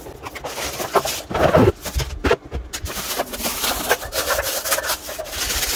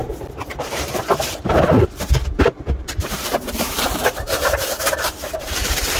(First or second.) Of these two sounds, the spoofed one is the second